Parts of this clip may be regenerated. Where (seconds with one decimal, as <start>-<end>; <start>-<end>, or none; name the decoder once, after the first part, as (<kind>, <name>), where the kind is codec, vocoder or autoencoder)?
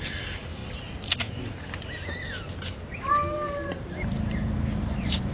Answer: 0.0-0.6 (vocoder, BigVGAN v2); 3.6-5.3